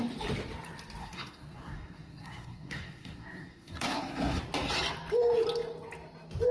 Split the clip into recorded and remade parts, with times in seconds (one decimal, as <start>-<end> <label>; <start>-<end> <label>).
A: 0.0-1.0 recorded; 1.0-4.4 remade; 4.4-6.5 recorded